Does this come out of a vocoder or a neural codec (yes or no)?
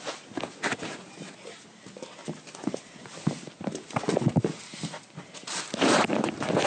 no